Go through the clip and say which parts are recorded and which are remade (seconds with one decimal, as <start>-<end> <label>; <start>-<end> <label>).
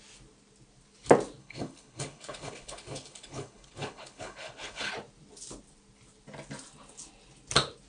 0.0-1.4 recorded; 1.4-4.9 remade; 4.9-7.9 recorded